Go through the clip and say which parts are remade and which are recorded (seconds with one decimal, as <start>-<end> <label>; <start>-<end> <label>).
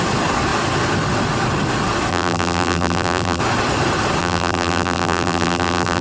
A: 0.0-2.1 recorded; 2.1-3.4 remade; 3.4-4.2 recorded; 4.2-6.0 remade